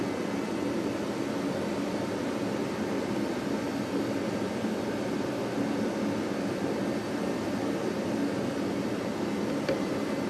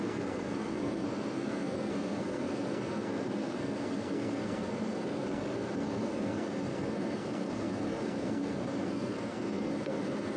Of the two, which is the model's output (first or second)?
second